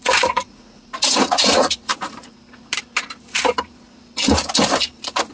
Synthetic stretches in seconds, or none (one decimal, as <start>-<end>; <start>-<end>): 0.0-1.9